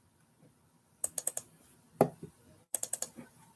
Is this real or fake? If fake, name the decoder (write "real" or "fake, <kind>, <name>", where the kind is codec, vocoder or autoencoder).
fake, vocoder, BigVGAN v2